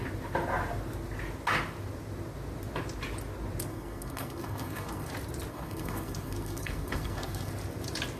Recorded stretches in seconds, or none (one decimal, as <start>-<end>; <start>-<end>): 0.0-3.7; 5.1-5.5; 7.5-8.2